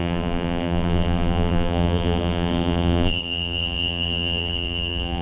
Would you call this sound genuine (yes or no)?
no